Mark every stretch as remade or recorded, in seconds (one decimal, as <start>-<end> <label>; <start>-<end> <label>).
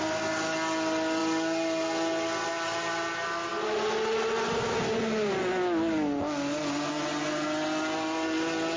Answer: 0.0-8.8 recorded